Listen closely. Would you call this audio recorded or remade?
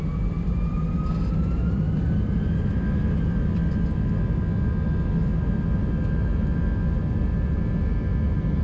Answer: recorded